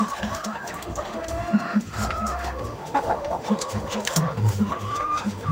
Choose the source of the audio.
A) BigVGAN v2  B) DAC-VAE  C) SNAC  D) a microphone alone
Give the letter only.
B